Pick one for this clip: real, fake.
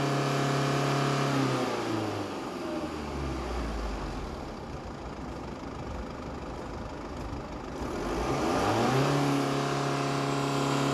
real